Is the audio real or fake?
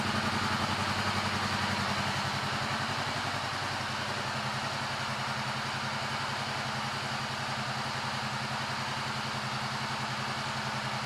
real